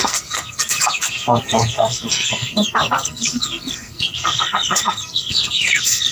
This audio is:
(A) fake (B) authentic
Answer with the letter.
A